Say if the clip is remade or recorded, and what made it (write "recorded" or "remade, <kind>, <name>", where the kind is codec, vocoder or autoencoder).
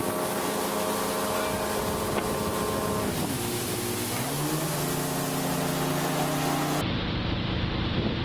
recorded